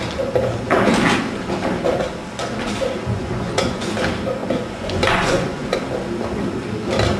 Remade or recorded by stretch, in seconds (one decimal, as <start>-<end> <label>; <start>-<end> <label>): 0.0-3.1 recorded; 3.1-3.9 remade; 3.9-4.4 recorded; 4.4-5.8 remade; 5.8-7.2 recorded